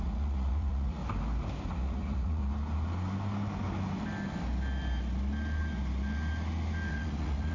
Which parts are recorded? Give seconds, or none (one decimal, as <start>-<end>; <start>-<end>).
1.0-1.7; 2.4-6.9